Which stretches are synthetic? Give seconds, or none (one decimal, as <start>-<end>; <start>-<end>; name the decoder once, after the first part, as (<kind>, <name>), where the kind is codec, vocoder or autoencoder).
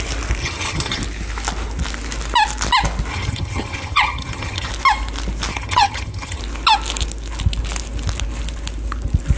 0.4-1.0 (vocoder, HiFi-GAN); 3.1-4.7; 5.5-6.4